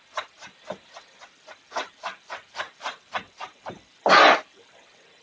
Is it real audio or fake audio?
real